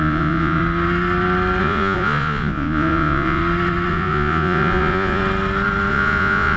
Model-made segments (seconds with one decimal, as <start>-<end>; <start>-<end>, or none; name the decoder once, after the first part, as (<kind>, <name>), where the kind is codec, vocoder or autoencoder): 0.0-0.6 (vocoder, Vocos); 1.6-3.4; 3.9-5.2; 5.9-6.6